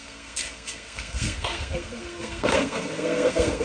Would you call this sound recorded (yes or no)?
no